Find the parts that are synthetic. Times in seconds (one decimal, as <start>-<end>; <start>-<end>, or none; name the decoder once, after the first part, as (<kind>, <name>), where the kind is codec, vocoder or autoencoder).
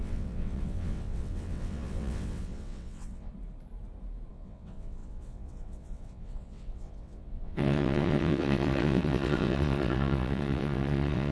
0.0-3.3 (vocoder, WaveNeXt); 4.3-11.3